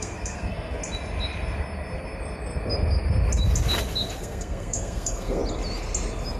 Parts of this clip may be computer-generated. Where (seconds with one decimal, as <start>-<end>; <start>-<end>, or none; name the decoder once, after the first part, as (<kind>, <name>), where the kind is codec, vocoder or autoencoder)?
0.0-0.8 (codec, SNAC); 4.2-5.4